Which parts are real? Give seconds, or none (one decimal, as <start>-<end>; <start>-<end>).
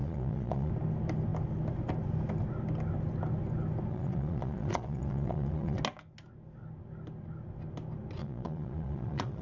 0.7-3.9; 5.8-8.2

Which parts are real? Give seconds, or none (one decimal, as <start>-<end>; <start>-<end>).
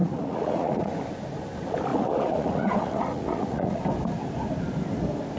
0.9-1.9; 3.8-5.4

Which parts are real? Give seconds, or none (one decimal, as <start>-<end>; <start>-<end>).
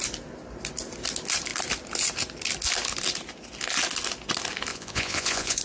0.0-4.7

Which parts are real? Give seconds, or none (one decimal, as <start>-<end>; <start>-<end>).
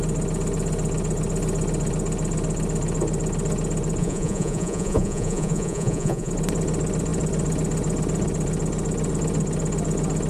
0.0-4.0; 6.3-10.3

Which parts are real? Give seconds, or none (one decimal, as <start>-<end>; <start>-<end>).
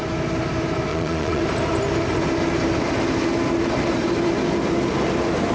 0.0-0.9; 1.4-5.5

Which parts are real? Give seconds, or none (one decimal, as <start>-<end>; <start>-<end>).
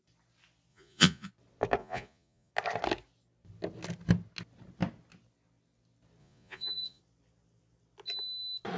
0.0-0.7; 1.3-1.8; 2.5-6.2; 7.0-8.8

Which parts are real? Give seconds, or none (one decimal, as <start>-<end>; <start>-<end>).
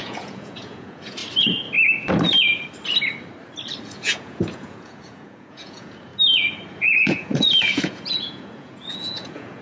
1.2-3.8; 6.1-6.7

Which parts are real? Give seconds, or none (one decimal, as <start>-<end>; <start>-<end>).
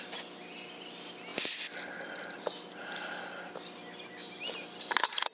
0.0-5.3